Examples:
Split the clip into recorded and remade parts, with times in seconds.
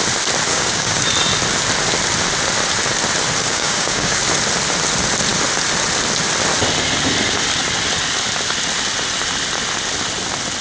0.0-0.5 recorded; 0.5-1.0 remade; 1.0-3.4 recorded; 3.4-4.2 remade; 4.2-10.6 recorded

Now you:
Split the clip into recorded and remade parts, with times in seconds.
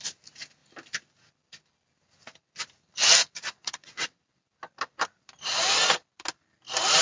0.0-3.6 recorded; 3.6-4.2 remade; 4.2-7.0 recorded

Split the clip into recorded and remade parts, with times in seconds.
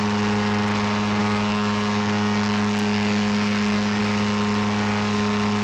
0.0-1.2 recorded; 1.2-4.0 remade; 4.0-5.6 recorded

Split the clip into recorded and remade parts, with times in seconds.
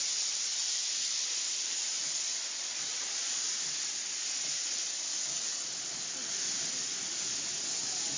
0.0-0.6 recorded; 0.6-4.0 remade; 4.0-8.2 recorded